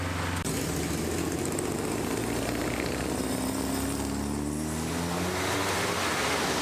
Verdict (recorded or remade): recorded